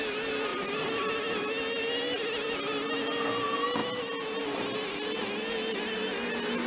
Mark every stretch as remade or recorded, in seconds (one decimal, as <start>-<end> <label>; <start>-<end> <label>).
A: 0.0-0.5 recorded; 0.5-1.1 remade; 1.1-6.7 recorded